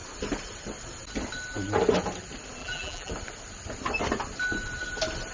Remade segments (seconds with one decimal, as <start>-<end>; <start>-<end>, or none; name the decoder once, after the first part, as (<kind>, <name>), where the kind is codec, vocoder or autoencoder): 2.6-3.1 (vocoder, BigVGAN v2)